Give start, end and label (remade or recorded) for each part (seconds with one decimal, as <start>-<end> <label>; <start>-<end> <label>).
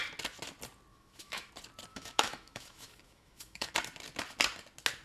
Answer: 0.0-0.9 recorded; 0.9-1.5 remade; 1.5-1.9 recorded; 1.9-3.7 remade; 3.7-5.0 recorded